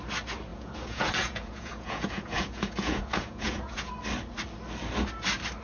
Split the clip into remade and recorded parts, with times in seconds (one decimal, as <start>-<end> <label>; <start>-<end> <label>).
0.0-0.5 recorded; 0.5-3.9 remade; 3.9-5.6 recorded